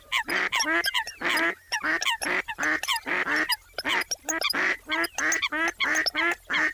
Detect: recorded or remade recorded